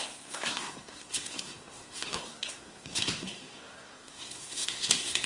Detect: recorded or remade remade